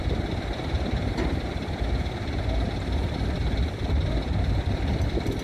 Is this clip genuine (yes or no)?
yes